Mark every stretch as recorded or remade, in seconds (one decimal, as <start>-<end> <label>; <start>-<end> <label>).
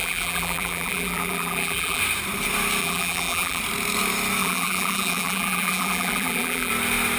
0.0-2.0 remade; 2.0-2.8 recorded; 2.8-3.6 remade; 3.6-4.4 recorded; 4.4-6.7 remade; 6.7-7.2 recorded